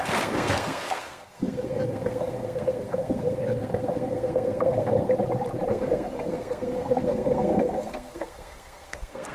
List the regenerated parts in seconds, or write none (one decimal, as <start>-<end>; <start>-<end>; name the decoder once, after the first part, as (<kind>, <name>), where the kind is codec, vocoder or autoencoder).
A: 0.0-5.1 (codec, SNAC); 5.7-9.3